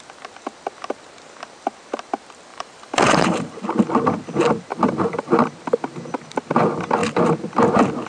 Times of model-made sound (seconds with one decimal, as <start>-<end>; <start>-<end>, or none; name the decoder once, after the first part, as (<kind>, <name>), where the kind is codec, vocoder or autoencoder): 2.5-3.6 (vocoder, BigVGAN v2); 4.7-5.3